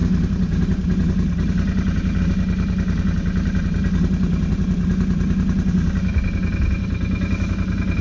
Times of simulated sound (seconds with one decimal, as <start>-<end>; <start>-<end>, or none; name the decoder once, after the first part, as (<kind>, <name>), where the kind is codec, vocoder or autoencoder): none